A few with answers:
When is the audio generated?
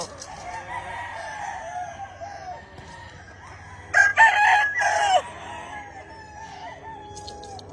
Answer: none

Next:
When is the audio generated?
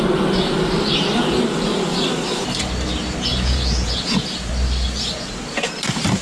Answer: 3.3-4.5 (vocoder, Vocos)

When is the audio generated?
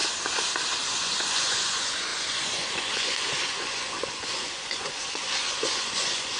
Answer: 0.9-6.4 (vocoder, Vocos)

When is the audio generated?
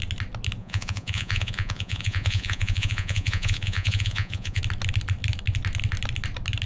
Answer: 0.6-4.6 (vocoder, Vocos)